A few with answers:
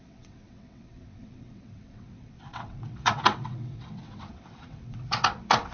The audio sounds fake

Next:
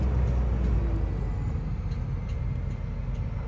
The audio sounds real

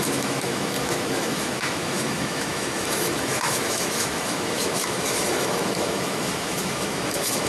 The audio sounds fake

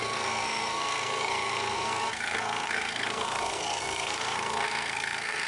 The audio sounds fake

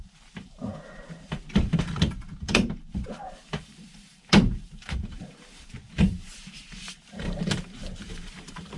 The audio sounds fake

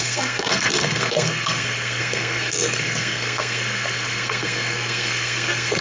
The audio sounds fake